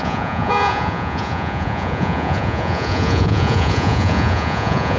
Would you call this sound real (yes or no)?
no